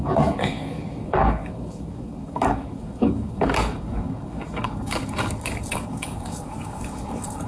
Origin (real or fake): fake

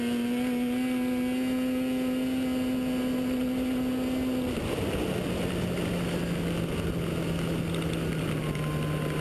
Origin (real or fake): real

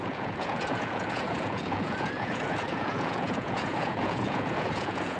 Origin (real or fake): fake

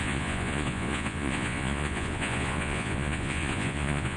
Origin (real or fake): fake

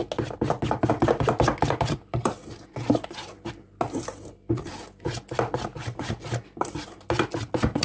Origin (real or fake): real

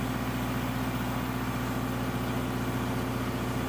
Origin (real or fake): real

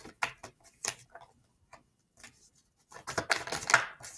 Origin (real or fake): real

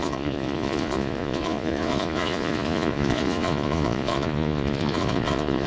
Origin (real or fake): fake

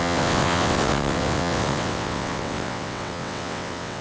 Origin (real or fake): fake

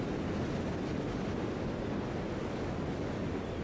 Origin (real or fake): real